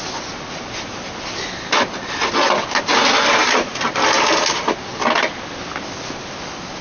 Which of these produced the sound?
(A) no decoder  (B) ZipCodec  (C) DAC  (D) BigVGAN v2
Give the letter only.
A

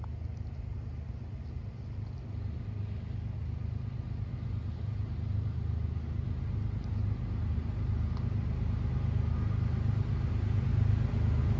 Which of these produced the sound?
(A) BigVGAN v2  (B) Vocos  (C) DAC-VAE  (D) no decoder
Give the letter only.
D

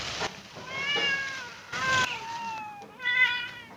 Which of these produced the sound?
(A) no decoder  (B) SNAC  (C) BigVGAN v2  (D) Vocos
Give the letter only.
C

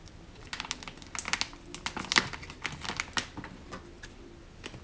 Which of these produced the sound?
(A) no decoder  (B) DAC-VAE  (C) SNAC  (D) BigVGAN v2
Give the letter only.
A